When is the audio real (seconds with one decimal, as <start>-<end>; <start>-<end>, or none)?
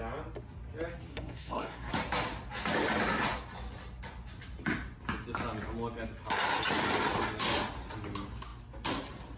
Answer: 0.0-1.1; 1.9-9.4